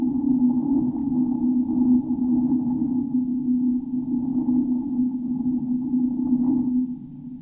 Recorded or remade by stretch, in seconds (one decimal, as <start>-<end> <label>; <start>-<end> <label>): 0.0-1.0 recorded; 1.0-2.8 remade; 2.8-3.3 recorded; 3.3-3.9 remade; 3.9-7.4 recorded